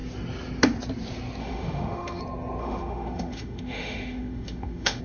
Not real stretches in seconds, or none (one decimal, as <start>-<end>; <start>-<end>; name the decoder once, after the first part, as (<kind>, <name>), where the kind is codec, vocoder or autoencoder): 1.4-2.2 (autoencoder, DAC-VAE); 2.6-5.0

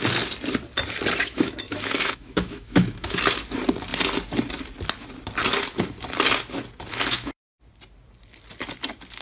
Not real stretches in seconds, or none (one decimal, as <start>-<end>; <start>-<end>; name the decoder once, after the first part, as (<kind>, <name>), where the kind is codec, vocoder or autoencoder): 1.2-3.2 (autoencoder, DAC-VAE); 6.9-7.4

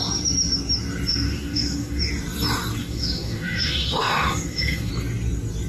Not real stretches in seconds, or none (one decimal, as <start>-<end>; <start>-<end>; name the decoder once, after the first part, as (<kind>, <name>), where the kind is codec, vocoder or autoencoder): 1.1-2.0 (autoencoder, DAC-VAE); 2.8-4.9